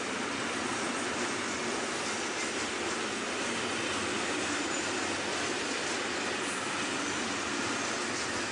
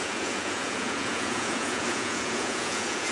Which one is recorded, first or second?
first